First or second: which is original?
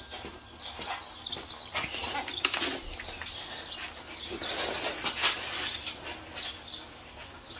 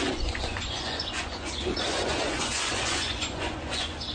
first